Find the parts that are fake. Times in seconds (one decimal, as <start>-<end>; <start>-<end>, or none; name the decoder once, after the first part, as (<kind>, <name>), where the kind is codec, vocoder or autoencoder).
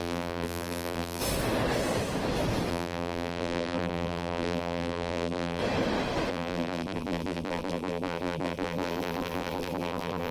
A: 0.0-1.2 (vocoder, BigVGAN v2); 2.7-5.6; 6.3-10.3